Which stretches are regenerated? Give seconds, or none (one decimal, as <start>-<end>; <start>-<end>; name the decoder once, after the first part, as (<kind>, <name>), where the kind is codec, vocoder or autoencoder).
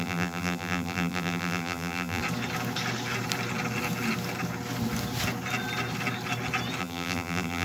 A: 0.0-2.2 (vocoder, BigVGAN v2); 6.8-7.6